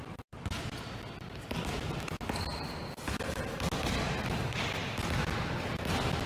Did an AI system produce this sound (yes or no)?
no